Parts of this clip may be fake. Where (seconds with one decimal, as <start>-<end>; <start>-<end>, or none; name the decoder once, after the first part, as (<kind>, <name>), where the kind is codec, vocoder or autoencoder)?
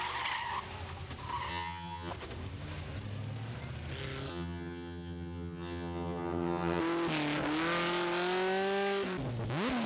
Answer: 1.5-2.1 (vocoder, HiFi-GAN); 4.3-6.8